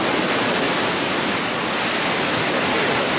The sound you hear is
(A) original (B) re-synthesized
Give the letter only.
A